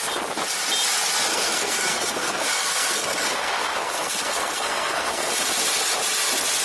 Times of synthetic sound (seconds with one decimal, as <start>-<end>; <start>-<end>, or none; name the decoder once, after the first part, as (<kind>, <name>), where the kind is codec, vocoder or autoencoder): 1.3-5.3 (codec, SNAC)